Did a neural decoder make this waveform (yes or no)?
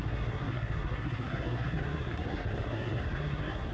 yes